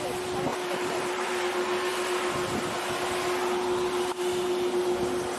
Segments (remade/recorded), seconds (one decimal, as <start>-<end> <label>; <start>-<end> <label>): 0.0-0.5 recorded; 0.5-1.4 remade; 1.4-5.4 recorded